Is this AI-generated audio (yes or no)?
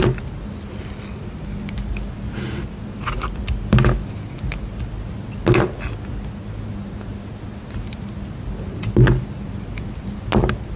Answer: no